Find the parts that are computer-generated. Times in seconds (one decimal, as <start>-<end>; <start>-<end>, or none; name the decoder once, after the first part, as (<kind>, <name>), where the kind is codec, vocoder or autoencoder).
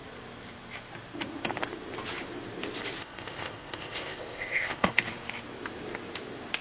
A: 3.0-4.9 (codec, ZipCodec)